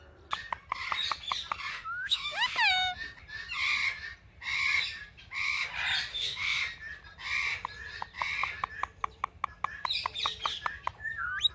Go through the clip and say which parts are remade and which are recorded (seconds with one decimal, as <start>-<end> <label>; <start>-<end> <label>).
0.0-1.7 recorded; 1.7-2.7 remade; 2.7-6.1 recorded; 6.1-6.6 remade; 6.6-11.5 recorded